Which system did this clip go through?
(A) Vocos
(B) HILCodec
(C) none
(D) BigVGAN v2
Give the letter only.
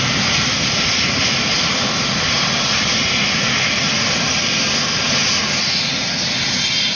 C